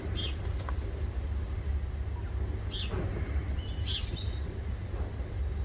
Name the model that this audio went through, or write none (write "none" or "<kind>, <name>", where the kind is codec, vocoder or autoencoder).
none